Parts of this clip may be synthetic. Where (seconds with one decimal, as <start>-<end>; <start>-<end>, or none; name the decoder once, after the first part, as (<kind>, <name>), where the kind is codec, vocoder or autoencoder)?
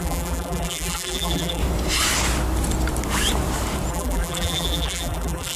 0.0-1.6 (vocoder, BigVGAN v2); 3.9-5.6